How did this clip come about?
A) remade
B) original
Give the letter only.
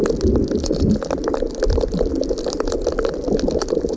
B